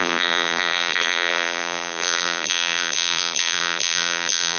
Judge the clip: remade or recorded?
remade